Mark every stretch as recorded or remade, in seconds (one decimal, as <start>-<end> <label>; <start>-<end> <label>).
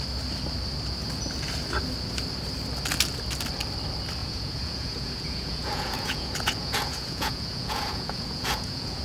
0.0-4.2 recorded; 4.2-9.0 remade